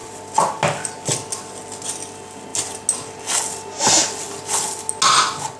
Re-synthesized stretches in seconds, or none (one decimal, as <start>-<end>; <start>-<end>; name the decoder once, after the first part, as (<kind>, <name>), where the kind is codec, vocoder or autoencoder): none